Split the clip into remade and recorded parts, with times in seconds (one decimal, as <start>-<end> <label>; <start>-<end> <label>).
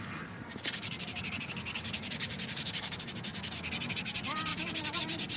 0.0-3.3 remade; 3.3-3.9 recorded; 3.9-5.4 remade